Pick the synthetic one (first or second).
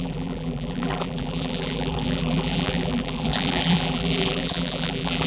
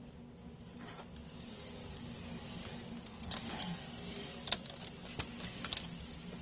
first